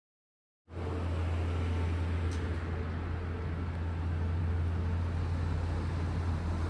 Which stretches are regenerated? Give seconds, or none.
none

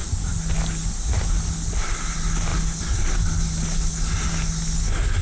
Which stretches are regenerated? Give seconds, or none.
none